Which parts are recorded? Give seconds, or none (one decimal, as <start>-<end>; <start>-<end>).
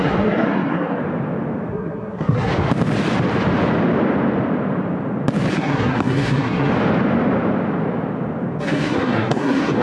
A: 1.0-1.7; 2.5-5.5; 6.7-8.6